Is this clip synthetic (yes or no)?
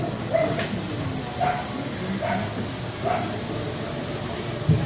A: no